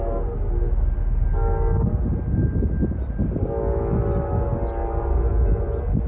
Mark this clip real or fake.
real